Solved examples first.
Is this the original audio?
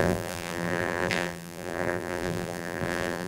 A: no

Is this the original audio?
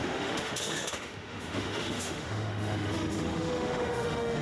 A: no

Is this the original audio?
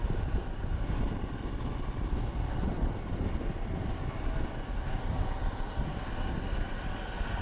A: yes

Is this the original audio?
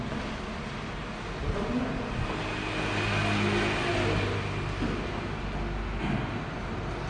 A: yes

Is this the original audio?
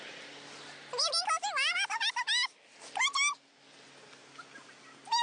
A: yes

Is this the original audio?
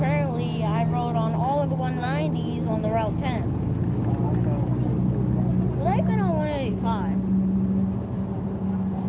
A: yes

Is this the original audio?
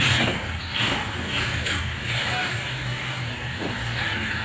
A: no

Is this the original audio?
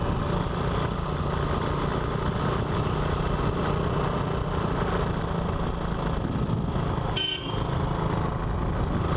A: yes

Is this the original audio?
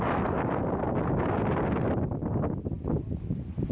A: yes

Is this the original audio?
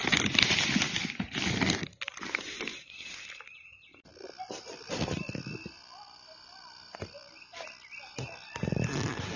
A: yes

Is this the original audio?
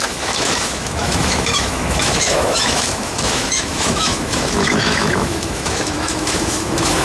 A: no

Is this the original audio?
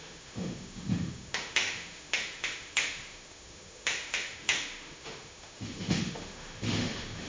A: no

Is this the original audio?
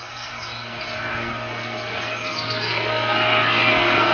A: no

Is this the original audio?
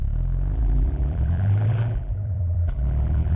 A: no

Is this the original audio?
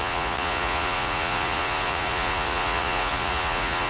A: no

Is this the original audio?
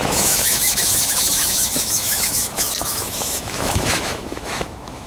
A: no